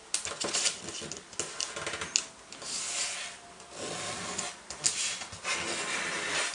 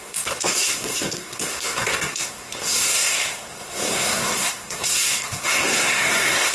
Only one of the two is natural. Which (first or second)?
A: first